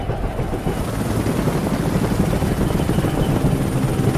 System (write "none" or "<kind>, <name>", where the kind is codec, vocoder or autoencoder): none